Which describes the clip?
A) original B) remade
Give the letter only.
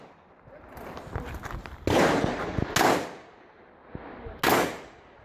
A